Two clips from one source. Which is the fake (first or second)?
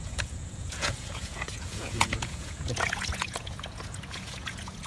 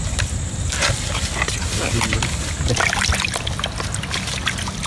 first